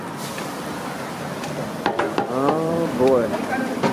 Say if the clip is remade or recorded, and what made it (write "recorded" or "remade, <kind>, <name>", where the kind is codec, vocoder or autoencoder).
remade, vocoder, BigVGAN v2